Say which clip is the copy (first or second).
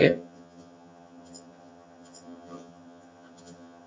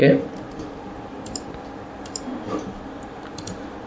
first